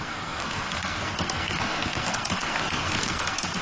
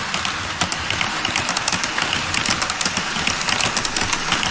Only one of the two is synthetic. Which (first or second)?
first